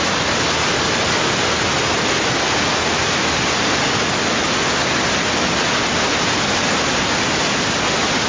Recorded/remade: recorded